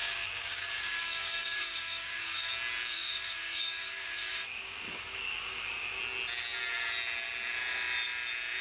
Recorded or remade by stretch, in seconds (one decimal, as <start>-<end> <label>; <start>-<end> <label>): 0.0-2.5 remade; 2.5-2.9 recorded; 2.9-6.0 remade; 6.0-8.6 recorded